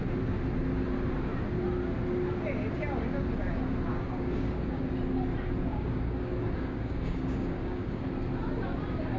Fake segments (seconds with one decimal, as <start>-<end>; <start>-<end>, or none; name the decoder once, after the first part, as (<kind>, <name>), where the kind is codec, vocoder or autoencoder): 3.9-4.8 (codec, DAC); 5.7-8.0